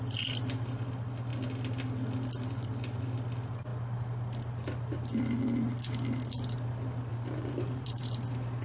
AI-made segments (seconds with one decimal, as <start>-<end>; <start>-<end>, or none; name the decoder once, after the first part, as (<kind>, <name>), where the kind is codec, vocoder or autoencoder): 7.1-8.0 (vocoder, BigVGAN v2)